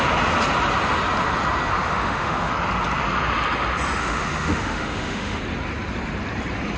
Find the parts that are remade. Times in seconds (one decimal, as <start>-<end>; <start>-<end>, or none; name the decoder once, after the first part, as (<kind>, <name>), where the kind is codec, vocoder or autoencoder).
1.7-2.5 (autoencoder, DAC-VAE); 4.0-5.4